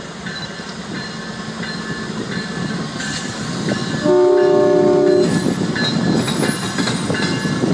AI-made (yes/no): no